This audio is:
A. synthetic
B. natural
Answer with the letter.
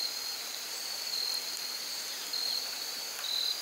B